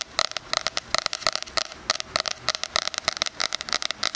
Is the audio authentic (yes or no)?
yes